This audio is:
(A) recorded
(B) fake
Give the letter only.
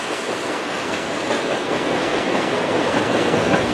B